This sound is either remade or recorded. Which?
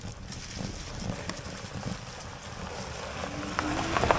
recorded